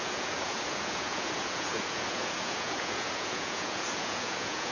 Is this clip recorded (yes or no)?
no